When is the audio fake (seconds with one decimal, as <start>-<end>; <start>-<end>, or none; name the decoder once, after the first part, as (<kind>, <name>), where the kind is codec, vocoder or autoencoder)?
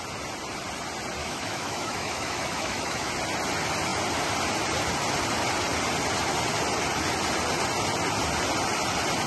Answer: 1.2-3.1 (autoencoder, DAC-VAE)